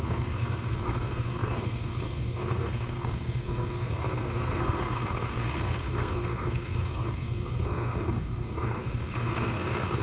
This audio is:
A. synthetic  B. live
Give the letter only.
A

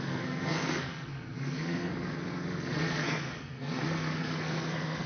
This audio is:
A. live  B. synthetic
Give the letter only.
B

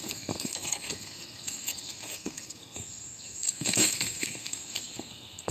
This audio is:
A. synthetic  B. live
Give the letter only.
A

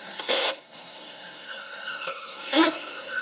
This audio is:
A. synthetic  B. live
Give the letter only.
A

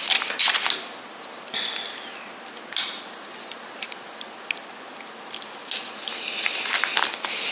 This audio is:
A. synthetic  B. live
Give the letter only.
B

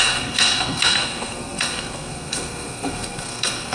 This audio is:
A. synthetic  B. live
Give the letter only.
A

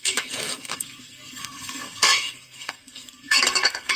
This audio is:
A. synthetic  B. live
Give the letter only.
A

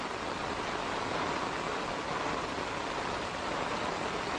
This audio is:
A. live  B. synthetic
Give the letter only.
A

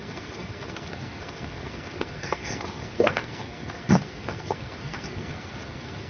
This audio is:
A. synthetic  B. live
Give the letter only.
A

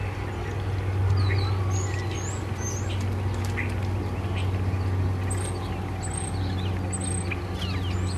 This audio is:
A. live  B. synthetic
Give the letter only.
A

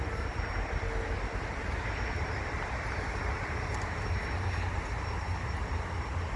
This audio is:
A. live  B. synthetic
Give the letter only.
A